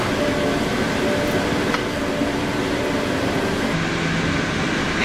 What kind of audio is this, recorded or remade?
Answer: recorded